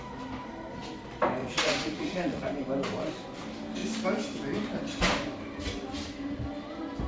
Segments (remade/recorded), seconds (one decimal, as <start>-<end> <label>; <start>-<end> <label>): 0.0-1.4 recorded; 1.4-2.5 remade; 2.5-7.1 recorded